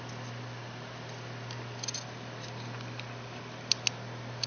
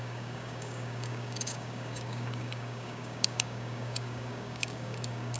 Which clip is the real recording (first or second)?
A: first